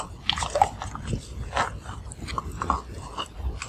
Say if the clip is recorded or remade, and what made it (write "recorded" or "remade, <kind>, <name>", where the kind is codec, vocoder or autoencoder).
recorded